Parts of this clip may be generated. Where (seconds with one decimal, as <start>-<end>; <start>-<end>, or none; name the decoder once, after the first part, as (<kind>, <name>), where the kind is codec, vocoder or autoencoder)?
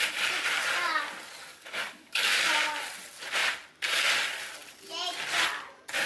1.5-2.4 (codec, DAC)